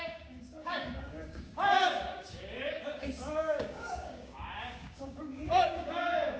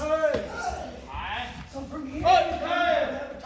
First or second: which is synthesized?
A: first